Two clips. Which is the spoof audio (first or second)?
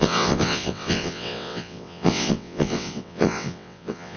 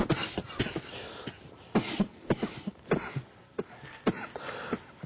first